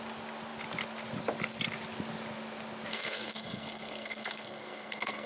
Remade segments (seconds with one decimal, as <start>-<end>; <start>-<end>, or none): 2.9-5.3